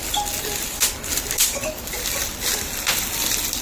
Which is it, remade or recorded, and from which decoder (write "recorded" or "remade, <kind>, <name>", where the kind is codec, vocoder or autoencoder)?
recorded